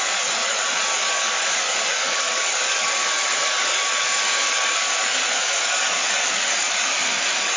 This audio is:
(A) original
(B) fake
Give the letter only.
B